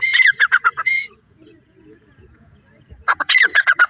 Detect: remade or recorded remade